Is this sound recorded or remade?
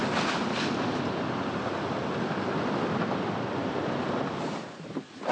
recorded